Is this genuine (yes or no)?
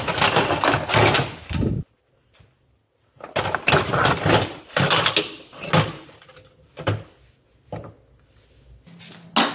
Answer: yes